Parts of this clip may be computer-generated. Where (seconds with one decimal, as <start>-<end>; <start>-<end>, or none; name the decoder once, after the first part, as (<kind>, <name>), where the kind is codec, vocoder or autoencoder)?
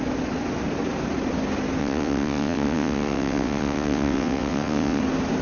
1.8-5.0 (vocoder, WaveNeXt)